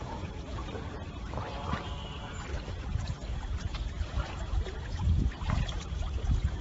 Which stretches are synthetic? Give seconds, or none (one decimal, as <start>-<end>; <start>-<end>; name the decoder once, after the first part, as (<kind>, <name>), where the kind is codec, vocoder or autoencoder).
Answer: 0.0-0.6 (vocoder, Vocos); 2.7-6.6